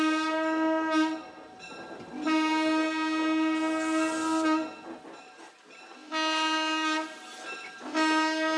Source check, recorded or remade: recorded